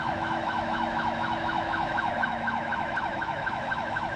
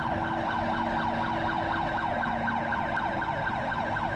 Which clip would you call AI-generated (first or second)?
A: first